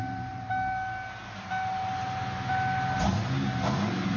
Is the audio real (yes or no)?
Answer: yes